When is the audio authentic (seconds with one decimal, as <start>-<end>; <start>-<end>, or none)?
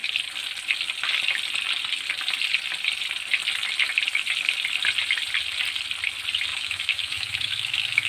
0.0-6.5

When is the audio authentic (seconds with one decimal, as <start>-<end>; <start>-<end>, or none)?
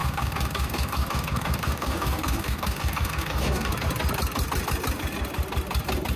3.7-6.2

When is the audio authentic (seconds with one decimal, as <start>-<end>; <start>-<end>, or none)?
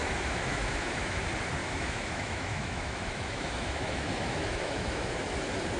1.2-1.6; 5.1-5.8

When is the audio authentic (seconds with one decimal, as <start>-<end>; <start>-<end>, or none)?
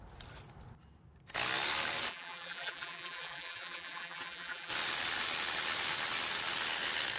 0.0-2.1; 4.7-7.2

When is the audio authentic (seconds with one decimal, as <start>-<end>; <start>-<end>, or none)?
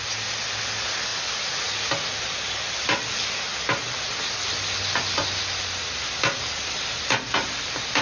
0.0-8.0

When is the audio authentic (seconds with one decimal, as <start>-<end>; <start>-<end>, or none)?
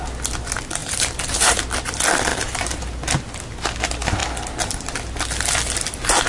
0.0-0.8; 1.6-2.3; 2.8-6.3